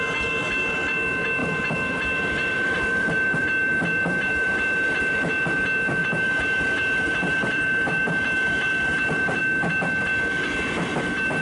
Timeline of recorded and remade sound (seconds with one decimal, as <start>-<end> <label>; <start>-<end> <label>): 0.0-1.4 recorded; 1.4-5.0 remade; 5.0-6.0 recorded; 6.0-9.4 remade; 9.4-11.4 recorded